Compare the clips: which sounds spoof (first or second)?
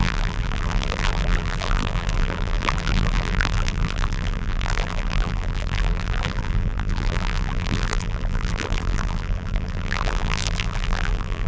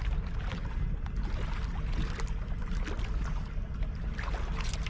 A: first